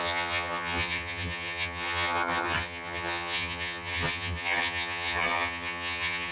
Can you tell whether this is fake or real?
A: fake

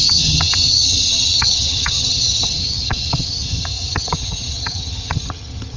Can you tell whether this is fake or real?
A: fake